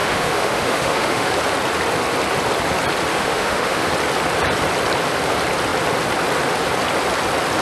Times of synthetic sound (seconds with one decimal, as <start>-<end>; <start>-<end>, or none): 0.0-1.3; 3.1-3.9